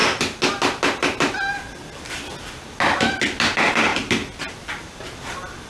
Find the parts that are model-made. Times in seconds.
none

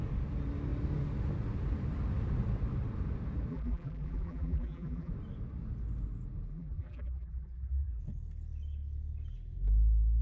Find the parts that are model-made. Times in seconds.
3.5-5.1 (vocoder, BigVGAN v2); 6.5-8.0

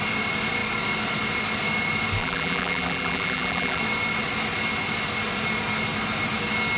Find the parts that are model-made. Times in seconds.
2.2-3.8 (vocoder, BigVGAN v2)